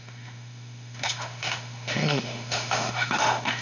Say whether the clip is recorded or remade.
remade